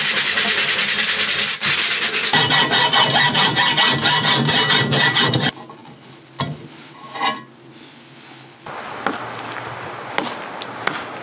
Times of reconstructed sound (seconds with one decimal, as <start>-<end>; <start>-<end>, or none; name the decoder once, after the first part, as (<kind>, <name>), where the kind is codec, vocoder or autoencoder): none